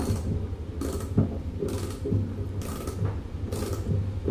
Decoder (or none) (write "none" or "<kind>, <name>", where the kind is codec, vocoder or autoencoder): none